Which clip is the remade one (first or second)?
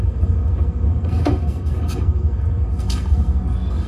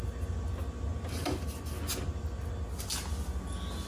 first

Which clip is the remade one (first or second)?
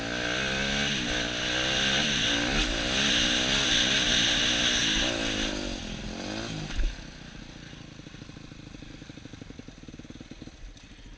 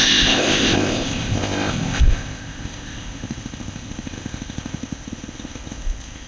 second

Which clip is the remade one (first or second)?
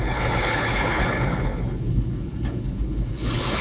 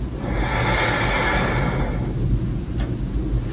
first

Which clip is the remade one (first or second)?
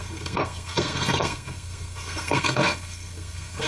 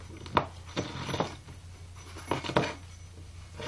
first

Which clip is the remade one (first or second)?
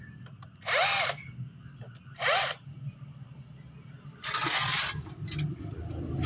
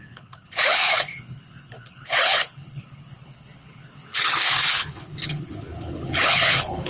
second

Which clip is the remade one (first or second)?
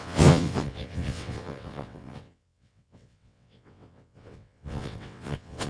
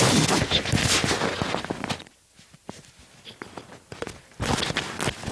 first